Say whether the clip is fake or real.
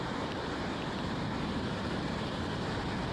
fake